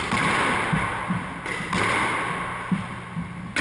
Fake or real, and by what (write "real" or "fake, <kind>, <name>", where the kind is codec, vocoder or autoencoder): real